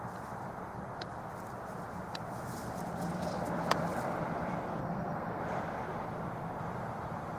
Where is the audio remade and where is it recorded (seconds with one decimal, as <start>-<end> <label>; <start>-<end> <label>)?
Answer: 0.0-4.8 recorded; 4.8-5.4 remade; 5.4-7.4 recorded

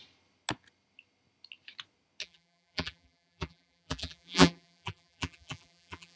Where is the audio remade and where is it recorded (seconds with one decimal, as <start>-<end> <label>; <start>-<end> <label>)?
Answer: 0.0-2.2 recorded; 2.2-6.2 remade

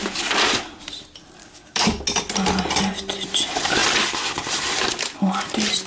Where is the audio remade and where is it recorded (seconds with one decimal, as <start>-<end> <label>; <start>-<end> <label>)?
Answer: 0.0-1.4 recorded; 1.4-2.0 remade; 2.0-5.9 recorded

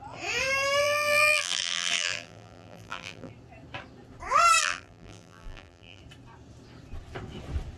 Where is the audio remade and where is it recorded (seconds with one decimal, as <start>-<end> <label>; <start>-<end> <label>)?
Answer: 0.0-0.8 recorded; 0.8-3.3 remade; 3.3-4.6 recorded; 4.6-6.0 remade; 6.0-7.8 recorded